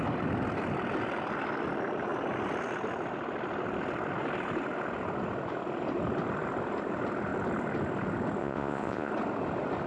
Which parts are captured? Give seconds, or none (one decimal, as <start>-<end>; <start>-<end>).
0.0-8.4; 9.1-9.9